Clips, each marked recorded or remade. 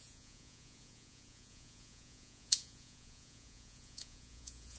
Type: remade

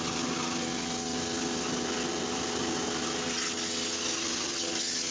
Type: recorded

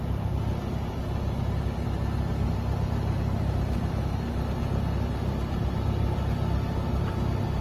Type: recorded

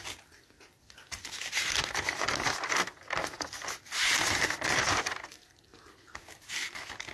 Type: recorded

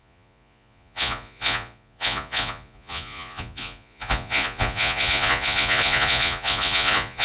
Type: remade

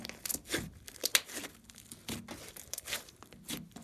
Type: recorded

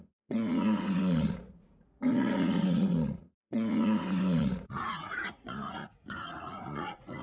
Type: remade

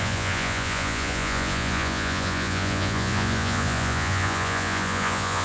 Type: remade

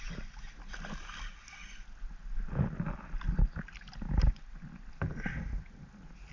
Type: recorded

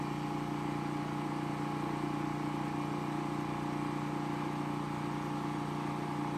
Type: recorded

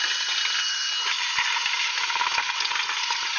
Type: recorded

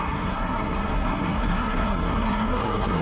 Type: remade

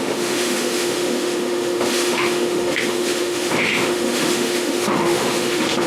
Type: remade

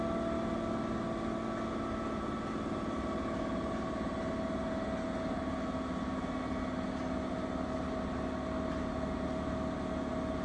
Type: recorded